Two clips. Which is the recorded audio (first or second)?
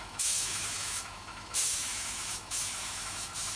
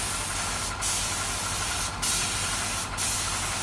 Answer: second